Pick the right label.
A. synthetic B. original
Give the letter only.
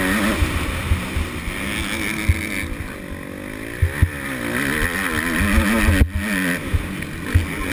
B